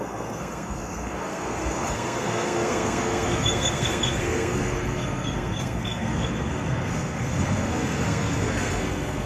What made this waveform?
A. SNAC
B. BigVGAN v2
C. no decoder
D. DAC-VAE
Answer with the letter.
A